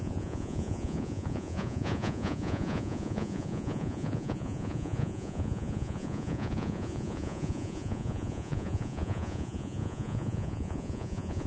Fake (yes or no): yes